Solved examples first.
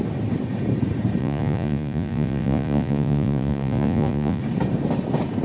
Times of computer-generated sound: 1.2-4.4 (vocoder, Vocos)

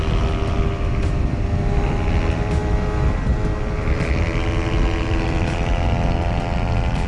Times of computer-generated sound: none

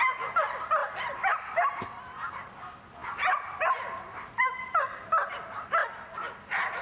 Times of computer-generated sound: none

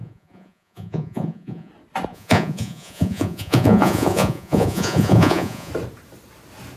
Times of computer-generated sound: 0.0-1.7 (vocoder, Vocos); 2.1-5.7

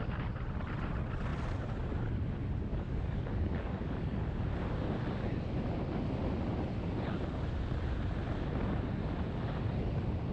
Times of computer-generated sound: 2.7-4.5 (codec, DAC)

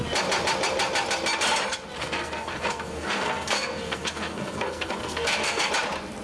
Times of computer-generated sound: 2.0-5.7 (codec, SNAC)

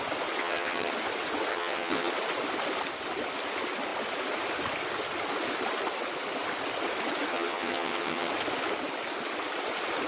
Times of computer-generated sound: 0.4-0.9 (vocoder, HiFi-GAN); 1.5-2.1; 7.3-8.3

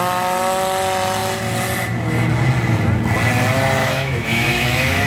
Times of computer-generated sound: 3.8-5.1 (autoencoder, DAC-VAE)